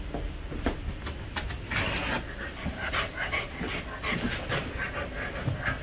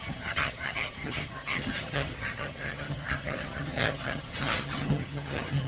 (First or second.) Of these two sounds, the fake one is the second